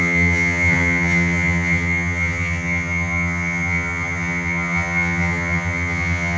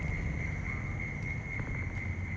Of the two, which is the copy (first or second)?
first